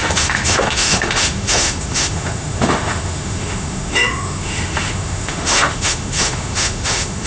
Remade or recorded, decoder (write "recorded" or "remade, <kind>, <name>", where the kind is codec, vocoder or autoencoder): remade, autoencoder, DAC-VAE